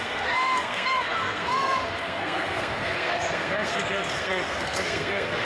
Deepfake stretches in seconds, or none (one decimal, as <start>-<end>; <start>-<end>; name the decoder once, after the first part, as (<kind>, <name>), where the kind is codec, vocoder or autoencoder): 0.0-5.4 (codec, SNAC)